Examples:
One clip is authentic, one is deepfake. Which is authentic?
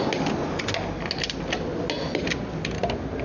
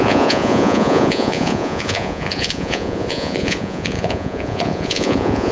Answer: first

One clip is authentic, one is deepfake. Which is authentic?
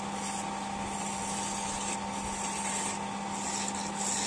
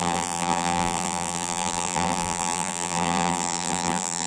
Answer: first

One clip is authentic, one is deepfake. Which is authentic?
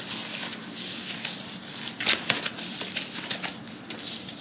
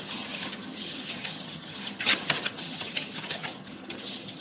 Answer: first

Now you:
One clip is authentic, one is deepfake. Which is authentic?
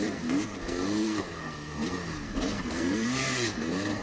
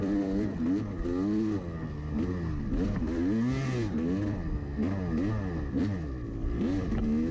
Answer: second